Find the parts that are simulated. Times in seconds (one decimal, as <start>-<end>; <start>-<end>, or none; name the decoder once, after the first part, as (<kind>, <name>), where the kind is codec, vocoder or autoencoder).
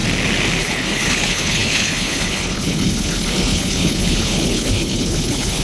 0.6-5.6 (codec, HILCodec)